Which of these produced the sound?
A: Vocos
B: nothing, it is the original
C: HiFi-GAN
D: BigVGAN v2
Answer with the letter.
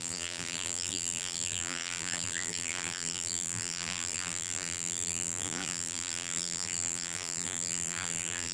D